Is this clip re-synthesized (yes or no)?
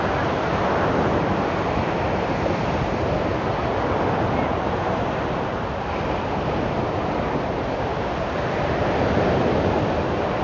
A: no